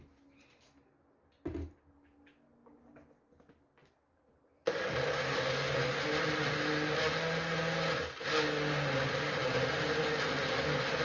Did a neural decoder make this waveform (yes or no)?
no